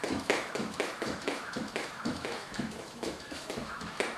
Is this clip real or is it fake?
fake